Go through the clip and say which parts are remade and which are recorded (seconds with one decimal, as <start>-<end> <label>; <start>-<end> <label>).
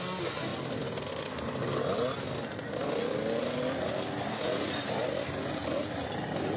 0.0-6.6 recorded